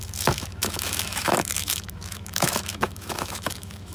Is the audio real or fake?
fake